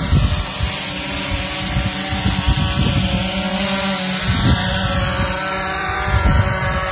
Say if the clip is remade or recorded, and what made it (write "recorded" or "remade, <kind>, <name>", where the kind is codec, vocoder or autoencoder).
recorded